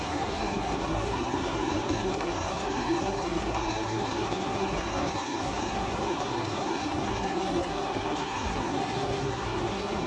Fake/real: fake